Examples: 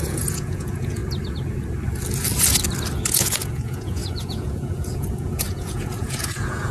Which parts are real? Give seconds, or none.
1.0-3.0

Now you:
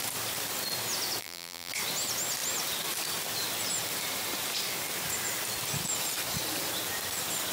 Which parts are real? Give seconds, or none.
0.0-1.2; 1.7-7.5

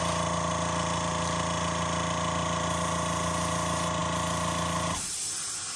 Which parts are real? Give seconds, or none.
0.0-5.8